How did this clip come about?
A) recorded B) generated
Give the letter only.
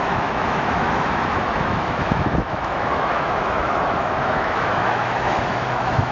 B